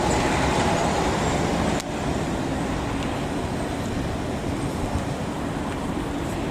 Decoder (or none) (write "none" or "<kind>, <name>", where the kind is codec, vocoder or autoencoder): vocoder, BigVGAN v2